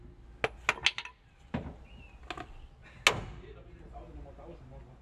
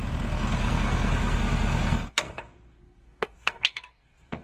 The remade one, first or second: second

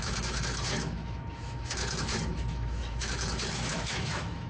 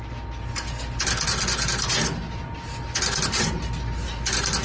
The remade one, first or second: first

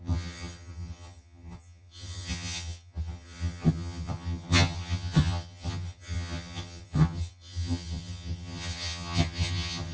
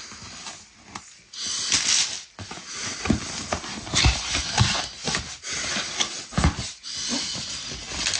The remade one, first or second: first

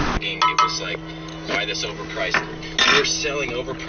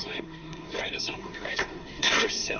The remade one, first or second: second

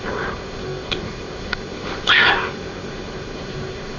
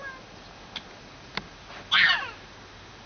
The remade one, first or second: first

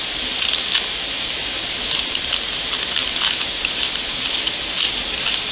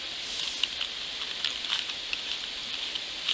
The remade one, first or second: second